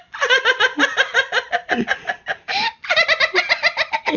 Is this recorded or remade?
recorded